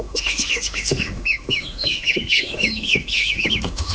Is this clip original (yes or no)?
no